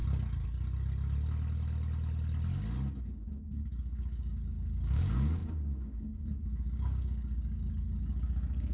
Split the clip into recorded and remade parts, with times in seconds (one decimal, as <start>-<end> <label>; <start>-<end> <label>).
0.0-3.0 recorded; 3.0-8.7 remade